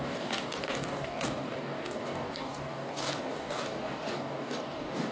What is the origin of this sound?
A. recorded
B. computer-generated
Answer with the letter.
B